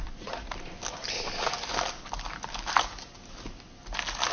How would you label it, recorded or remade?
recorded